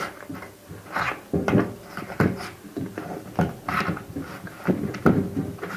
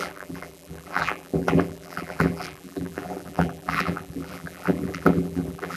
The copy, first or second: second